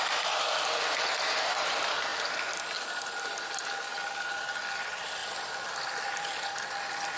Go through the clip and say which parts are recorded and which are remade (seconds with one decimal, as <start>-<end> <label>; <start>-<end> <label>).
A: 0.0-3.9 remade; 3.9-4.6 recorded; 4.6-7.2 remade

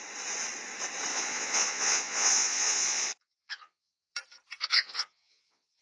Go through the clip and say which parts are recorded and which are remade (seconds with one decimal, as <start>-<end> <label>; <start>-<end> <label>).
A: 0.0-1.1 recorded; 1.1-4.1 remade; 4.1-4.6 recorded; 4.6-5.8 remade

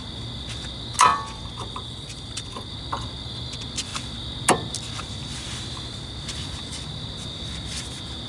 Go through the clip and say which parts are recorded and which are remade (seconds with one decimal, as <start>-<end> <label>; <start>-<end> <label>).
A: 0.0-1.1 recorded; 1.1-2.7 remade; 2.7-8.3 recorded